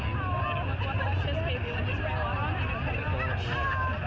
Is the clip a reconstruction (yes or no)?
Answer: no